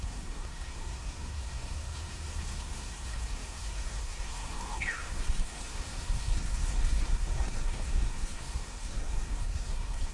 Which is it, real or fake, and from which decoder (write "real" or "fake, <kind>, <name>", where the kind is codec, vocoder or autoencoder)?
fake, codec, SNAC